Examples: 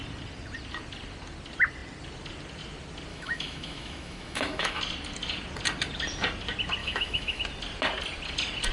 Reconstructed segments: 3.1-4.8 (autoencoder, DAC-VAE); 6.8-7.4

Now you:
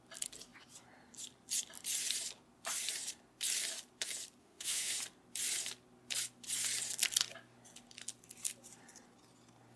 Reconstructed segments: 4.4-5.0 (autoencoder, DAC-VAE)

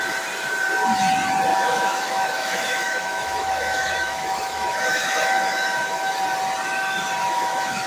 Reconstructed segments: 1.5-6.2 (autoencoder, DAC-VAE); 7.2-7.9

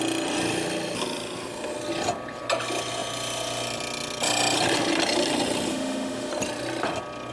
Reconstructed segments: 5.7-6.3 (autoencoder, DAC-VAE)